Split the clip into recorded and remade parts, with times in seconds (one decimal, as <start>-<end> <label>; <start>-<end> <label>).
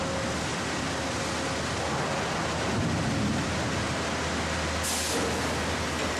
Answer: 0.0-6.2 recorded